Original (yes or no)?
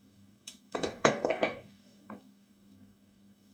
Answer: no